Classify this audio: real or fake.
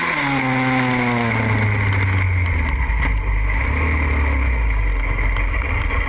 real